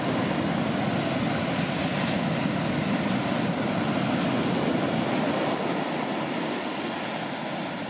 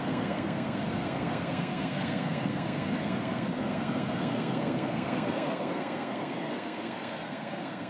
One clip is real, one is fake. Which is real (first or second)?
first